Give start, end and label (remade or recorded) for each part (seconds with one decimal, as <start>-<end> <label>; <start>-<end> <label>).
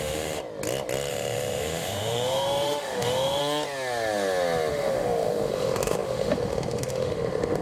0.0-0.4 remade; 0.4-1.1 recorded; 1.1-3.4 remade; 3.4-4.7 recorded; 4.7-7.6 remade